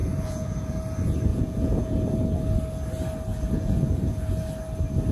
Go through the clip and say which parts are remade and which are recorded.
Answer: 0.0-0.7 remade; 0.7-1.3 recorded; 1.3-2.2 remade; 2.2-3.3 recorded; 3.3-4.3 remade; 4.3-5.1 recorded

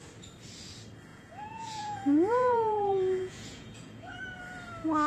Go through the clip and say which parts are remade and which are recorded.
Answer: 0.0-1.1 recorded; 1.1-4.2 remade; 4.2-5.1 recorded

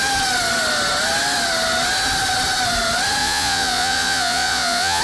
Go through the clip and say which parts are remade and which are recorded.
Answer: 0.0-3.2 recorded; 3.2-5.0 remade

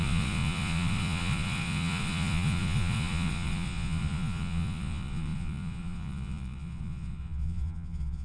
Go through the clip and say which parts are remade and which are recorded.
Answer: 0.0-8.2 remade

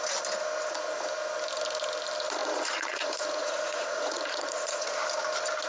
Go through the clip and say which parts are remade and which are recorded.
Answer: 0.0-2.4 recorded; 2.4-5.0 remade; 5.0-5.7 recorded

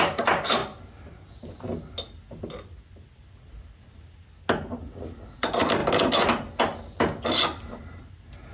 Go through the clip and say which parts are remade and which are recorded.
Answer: 0.0-8.5 recorded

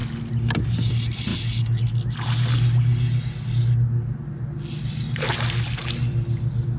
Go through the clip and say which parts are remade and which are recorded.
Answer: 0.0-6.8 recorded

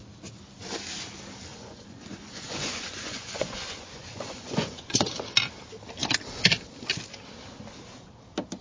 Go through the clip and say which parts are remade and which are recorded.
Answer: 0.0-1.5 recorded; 1.5-5.1 remade; 5.1-8.6 recorded